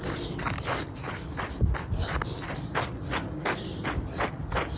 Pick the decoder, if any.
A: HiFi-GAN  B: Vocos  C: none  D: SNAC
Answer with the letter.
C